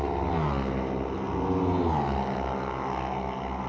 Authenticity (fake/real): real